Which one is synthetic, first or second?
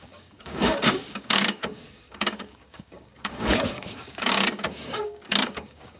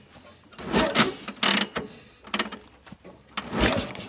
first